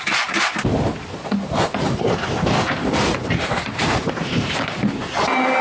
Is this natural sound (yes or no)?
no